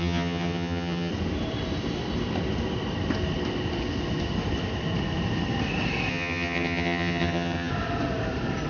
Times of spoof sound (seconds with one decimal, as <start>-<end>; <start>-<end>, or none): 0.0-1.1; 6.1-7.7